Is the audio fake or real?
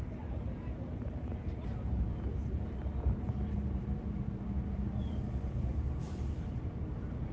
fake